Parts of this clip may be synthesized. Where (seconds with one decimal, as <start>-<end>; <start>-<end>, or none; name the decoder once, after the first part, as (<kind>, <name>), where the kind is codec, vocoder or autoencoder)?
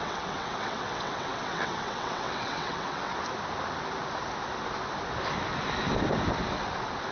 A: 0.0-3.1 (vocoder, WaveNeXt)